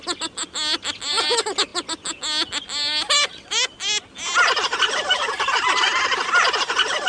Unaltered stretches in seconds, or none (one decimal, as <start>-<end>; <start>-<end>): 0.0-7.1